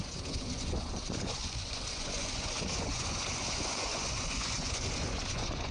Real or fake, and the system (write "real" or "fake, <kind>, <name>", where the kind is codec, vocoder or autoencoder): fake, vocoder, Vocos